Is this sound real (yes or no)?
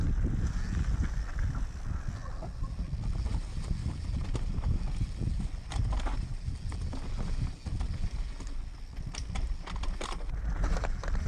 yes